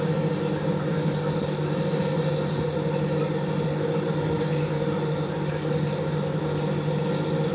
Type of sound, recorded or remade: recorded